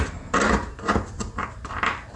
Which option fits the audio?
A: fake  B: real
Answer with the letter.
B